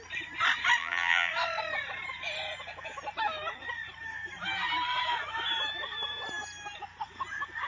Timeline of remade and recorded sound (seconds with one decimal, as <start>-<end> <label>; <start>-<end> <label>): 0.0-0.8 recorded; 0.8-1.3 remade; 1.3-7.7 recorded